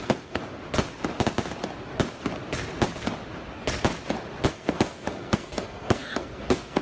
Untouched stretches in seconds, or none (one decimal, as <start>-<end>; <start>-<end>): 0.4-4.5